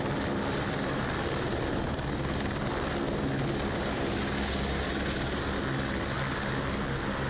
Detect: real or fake real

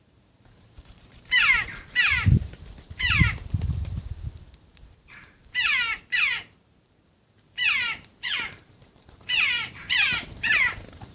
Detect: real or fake fake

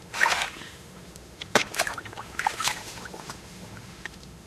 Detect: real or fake fake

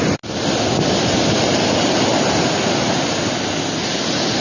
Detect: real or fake real